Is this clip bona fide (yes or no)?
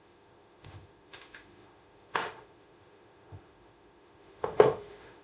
no